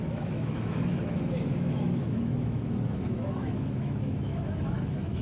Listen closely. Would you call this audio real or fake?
fake